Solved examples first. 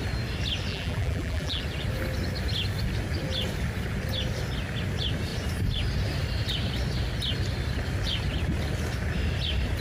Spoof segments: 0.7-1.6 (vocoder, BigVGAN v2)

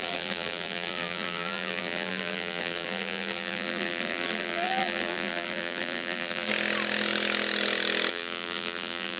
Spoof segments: 0.0-6.5 (vocoder, BigVGAN v2); 8.1-9.2

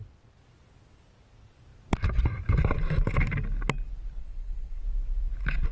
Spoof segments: 4.2-4.8 (vocoder, WaveNeXt)